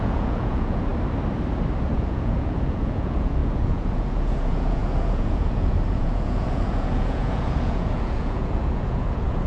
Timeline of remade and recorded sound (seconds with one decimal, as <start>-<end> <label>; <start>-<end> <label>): 0.0-0.9 remade; 0.9-1.9 recorded; 1.9-9.5 remade